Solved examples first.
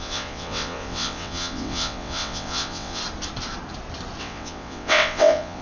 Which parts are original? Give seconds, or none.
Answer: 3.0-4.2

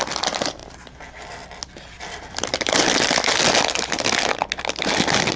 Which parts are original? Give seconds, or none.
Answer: 0.0-5.4